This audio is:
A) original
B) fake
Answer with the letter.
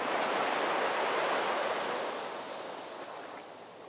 A